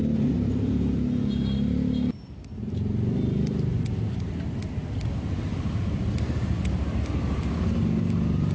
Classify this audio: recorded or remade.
recorded